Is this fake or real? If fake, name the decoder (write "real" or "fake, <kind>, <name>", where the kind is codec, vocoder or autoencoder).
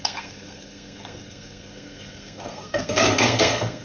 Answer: fake, codec, SNAC